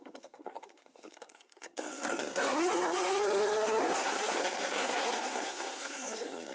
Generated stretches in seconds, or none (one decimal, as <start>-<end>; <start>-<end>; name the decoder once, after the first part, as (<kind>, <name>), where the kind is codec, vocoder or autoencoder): 0.0-6.5 (codec, SNAC)